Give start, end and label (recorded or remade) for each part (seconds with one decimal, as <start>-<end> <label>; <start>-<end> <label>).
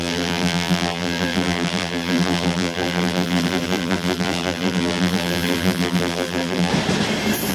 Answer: 0.0-6.7 remade; 6.7-7.5 recorded